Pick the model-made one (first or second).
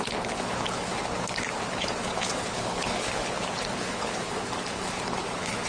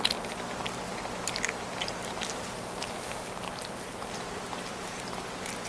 first